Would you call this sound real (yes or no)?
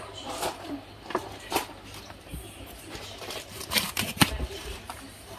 no